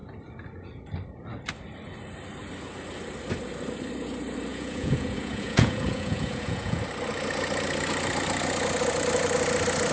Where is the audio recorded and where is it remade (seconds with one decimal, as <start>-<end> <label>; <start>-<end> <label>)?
0.0-4.5 recorded; 4.5-6.8 remade; 6.8-9.9 recorded